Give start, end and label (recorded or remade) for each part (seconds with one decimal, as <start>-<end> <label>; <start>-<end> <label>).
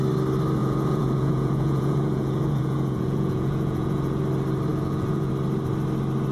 0.0-0.6 recorded; 0.6-4.2 remade; 4.2-4.7 recorded; 4.7-5.3 remade; 5.3-6.3 recorded